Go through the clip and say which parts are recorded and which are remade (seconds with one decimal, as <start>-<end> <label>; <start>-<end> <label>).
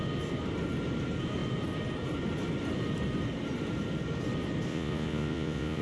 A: 0.0-4.7 recorded; 4.7-5.8 remade